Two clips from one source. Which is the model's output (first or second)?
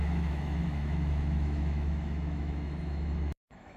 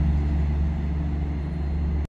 first